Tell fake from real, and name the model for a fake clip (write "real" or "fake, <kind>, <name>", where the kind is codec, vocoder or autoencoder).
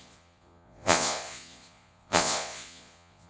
fake, vocoder, Vocos